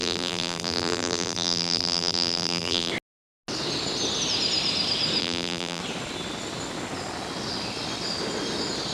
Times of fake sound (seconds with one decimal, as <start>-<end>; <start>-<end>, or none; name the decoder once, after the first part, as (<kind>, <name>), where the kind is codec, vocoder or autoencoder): 0.0-2.9 (vocoder, BigVGAN v2); 5.2-5.8